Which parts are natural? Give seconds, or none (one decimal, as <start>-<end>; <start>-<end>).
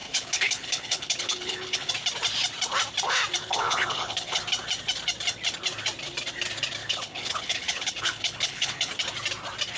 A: 1.9-3.4; 4.4-6.8; 8.9-9.8